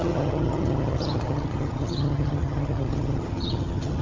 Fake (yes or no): yes